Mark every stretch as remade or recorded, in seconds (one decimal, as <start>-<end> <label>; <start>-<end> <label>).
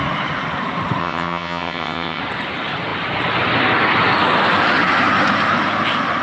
0.0-1.0 recorded; 1.0-2.2 remade; 2.2-6.2 recorded